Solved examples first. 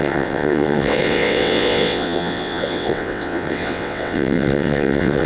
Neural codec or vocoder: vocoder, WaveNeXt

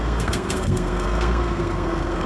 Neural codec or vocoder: codec, SNAC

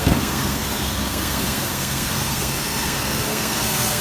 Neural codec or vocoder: codec, SNAC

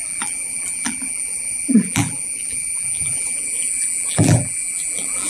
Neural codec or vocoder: vocoder, BigVGAN v2